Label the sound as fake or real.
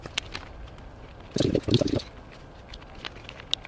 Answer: real